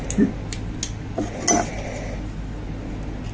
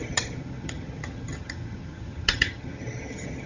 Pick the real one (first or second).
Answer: first